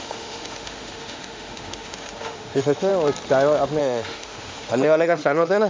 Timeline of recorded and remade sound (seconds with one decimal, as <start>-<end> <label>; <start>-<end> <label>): 0.0-2.9 remade; 2.9-3.8 recorded; 3.8-5.7 remade